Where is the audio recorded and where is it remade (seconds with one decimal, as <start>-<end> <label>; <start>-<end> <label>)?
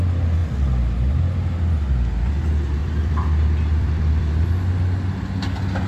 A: 0.0-2.8 recorded; 2.8-4.3 remade; 4.3-5.9 recorded